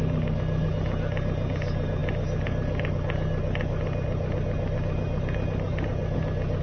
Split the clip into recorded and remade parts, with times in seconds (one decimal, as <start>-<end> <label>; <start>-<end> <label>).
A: 0.0-6.6 recorded